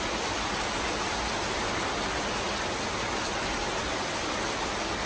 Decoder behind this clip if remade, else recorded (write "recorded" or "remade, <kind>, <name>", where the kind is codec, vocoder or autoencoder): recorded